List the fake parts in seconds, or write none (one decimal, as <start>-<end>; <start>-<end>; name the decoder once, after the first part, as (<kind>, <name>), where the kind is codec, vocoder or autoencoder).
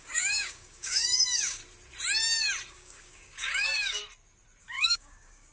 0.0-1.6 (codec, DAC); 2.7-4.0; 4.6-5.5